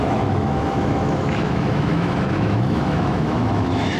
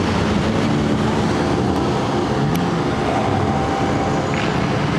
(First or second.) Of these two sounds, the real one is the second